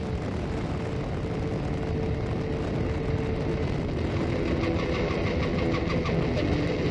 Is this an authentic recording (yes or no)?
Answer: yes